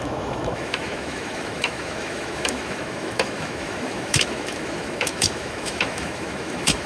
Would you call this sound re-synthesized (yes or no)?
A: yes